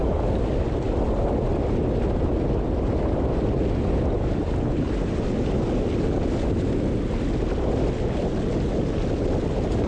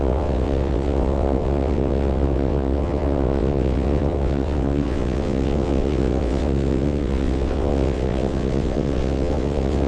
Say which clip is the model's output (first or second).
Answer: second